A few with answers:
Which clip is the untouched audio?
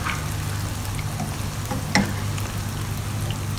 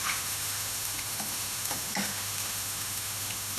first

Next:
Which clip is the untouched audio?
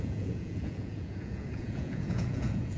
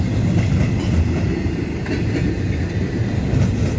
second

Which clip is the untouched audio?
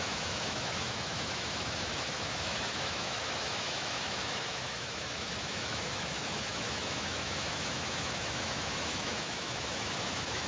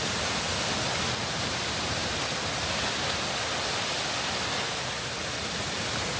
second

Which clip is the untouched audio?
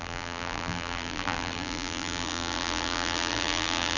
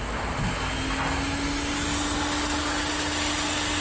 second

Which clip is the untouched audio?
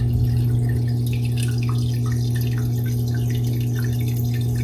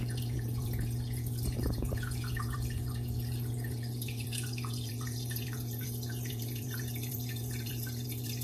first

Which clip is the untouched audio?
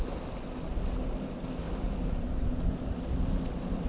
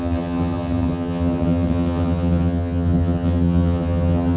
first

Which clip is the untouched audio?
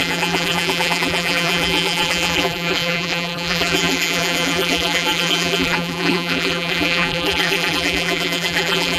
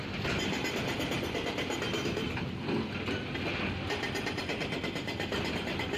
second